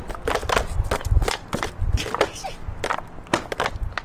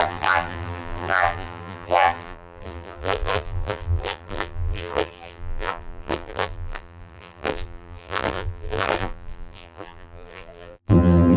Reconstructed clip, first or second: second